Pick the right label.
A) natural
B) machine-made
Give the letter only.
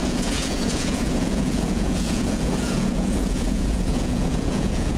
B